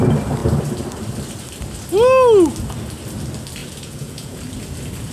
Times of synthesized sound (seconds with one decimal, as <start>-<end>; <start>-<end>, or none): 3.6-4.4